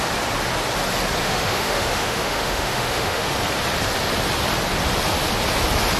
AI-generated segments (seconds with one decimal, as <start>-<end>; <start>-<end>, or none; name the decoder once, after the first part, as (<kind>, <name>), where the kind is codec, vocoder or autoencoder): 1.2-3.3 (autoencoder, DAC-VAE)